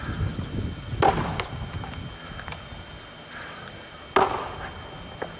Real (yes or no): yes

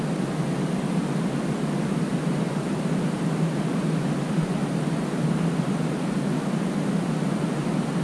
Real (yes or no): yes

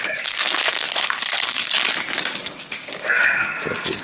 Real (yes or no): no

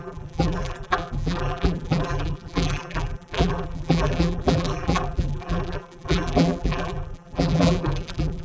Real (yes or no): no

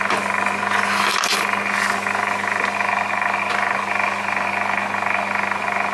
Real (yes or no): yes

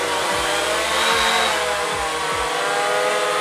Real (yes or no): yes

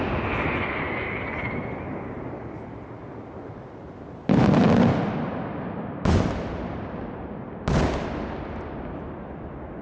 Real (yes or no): yes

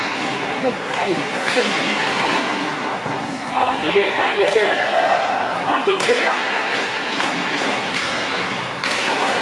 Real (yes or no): no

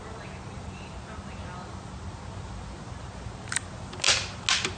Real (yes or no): yes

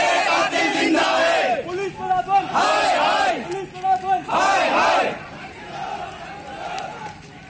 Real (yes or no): yes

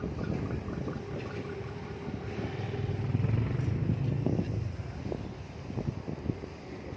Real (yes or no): yes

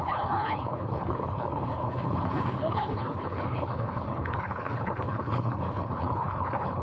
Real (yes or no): no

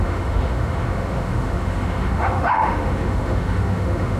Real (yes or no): no